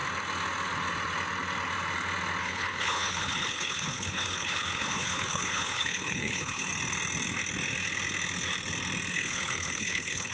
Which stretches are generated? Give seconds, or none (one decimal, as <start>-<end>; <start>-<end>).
2.4-6.7; 9.1-10.3